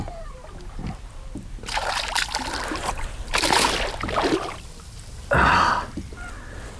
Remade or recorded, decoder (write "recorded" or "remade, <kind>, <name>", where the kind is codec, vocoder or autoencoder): recorded